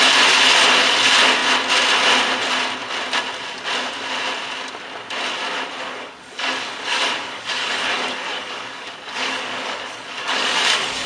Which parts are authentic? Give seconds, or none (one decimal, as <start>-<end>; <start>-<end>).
0.0-5.8